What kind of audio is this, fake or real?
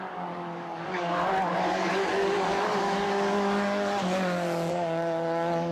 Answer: fake